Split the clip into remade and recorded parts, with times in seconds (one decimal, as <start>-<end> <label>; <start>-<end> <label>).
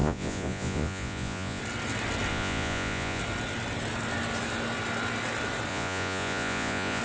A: 0.0-1.6 remade; 1.6-2.3 recorded; 2.3-3.2 remade; 3.2-5.7 recorded; 5.7-7.0 remade